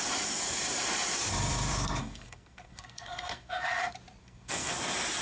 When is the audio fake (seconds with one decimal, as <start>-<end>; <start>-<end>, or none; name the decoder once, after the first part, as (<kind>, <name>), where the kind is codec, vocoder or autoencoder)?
2.0-3.8 (codec, SNAC); 4.2-4.7